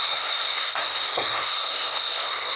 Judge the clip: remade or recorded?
remade